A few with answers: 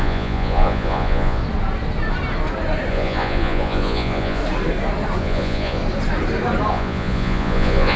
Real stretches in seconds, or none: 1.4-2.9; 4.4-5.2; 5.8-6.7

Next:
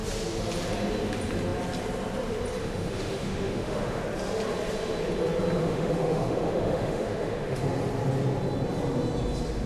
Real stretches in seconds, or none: 0.0-2.6; 4.0-5.6; 7.6-9.7

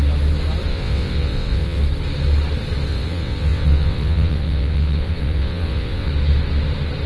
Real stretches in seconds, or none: 0.0-0.7; 1.8-2.9; 6.1-7.1

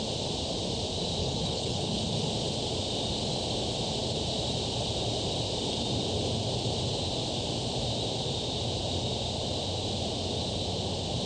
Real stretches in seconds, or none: 0.0-1.2; 2.0-11.3

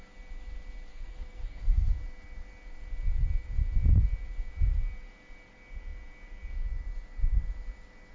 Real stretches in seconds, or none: 0.0-0.9; 1.9-8.1

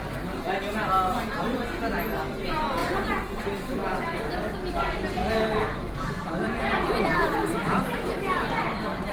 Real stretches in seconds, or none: 0.0-5.2; 8.2-9.1

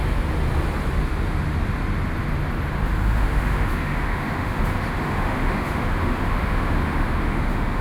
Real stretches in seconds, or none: 0.0-3.0